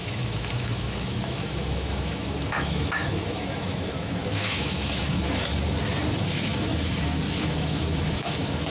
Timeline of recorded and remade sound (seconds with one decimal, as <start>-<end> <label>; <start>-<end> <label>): 0.0-5.5 remade; 5.5-6.3 recorded; 6.3-6.7 remade; 6.7-7.4 recorded; 7.4-8.7 remade